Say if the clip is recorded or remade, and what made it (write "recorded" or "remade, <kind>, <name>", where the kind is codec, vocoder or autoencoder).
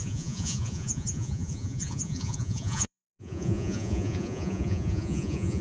remade, vocoder, Vocos